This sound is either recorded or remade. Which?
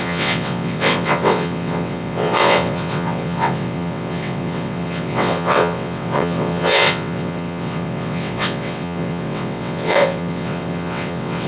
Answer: remade